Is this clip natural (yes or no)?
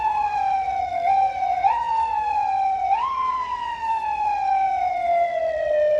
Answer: no